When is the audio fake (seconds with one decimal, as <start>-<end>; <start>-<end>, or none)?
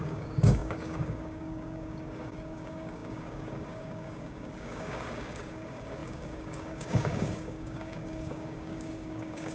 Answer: 0.0-9.5